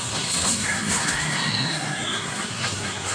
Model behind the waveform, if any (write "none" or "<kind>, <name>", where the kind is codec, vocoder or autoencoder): codec, SNAC